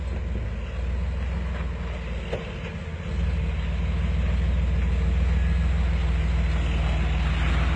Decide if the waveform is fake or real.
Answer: real